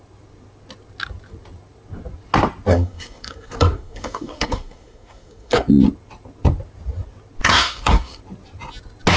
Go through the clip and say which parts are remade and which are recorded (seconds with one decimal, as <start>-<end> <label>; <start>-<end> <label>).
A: 0.0-2.7 recorded; 2.7-5.7 remade; 5.7-7.4 recorded; 7.4-8.2 remade; 8.2-9.2 recorded